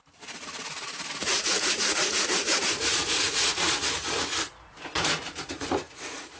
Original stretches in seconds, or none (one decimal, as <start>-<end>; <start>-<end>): none